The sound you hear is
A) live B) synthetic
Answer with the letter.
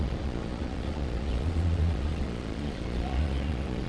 B